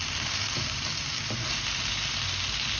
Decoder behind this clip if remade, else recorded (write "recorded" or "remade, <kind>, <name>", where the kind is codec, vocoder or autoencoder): recorded